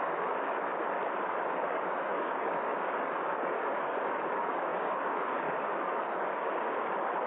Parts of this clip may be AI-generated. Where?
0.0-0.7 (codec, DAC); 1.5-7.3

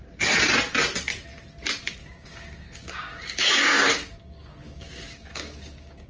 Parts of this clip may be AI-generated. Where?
2.0-6.1 (codec, DAC)

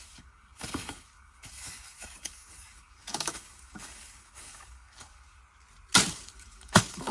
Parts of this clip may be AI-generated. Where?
0.0-5.4 (codec, DAC); 6.1-7.1

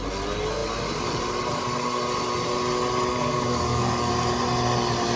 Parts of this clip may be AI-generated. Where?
3.1-4.1 (codec, DAC)

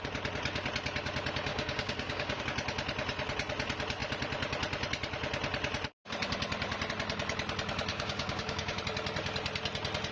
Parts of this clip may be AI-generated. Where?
1.5-2.4 (codec, DAC); 7.9-8.8

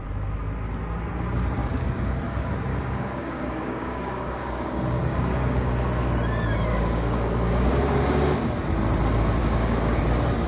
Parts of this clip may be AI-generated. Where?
1.6-2.2 (codec, DAC); 2.7-5.7; 6.7-8.4; 9.4-10.0

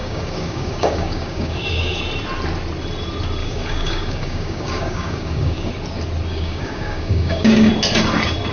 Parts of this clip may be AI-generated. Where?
0.0-2.0 (codec, DAC); 3.4-5.7; 6.3-7.7